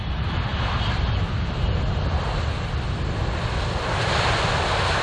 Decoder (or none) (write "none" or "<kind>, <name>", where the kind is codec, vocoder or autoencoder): none